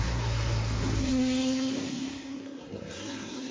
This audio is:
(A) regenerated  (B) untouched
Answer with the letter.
A